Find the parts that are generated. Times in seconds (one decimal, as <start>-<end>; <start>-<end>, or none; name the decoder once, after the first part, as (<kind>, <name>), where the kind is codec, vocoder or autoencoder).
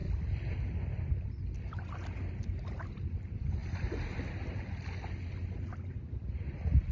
none